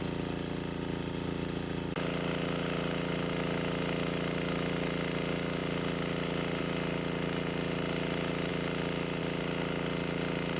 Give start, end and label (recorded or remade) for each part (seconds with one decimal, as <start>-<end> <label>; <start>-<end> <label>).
0.0-10.6 recorded